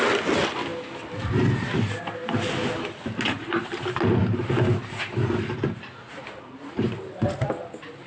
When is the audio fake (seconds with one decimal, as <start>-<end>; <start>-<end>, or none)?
none